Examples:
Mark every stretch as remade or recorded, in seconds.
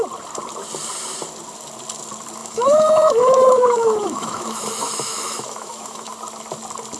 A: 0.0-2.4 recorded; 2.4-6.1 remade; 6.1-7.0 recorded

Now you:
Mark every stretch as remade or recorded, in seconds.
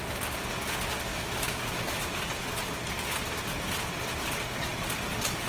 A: 0.0-1.1 recorded; 1.1-2.2 remade; 2.2-5.5 recorded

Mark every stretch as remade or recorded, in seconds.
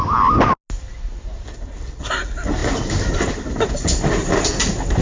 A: 0.0-5.0 recorded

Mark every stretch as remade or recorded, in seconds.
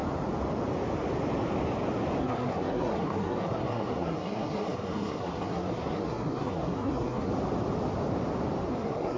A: 0.0-2.2 recorded; 2.2-7.3 remade; 7.3-8.7 recorded; 8.7-9.2 remade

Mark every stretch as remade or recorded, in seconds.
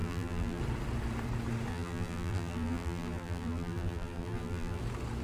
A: 0.0-0.6 remade; 0.6-1.7 recorded; 1.7-4.8 remade; 4.8-5.2 recorded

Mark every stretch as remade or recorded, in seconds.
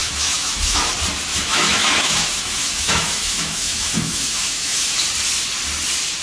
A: 0.0-0.9 remade; 0.9-1.3 recorded; 1.3-5.0 remade; 5.0-6.2 recorded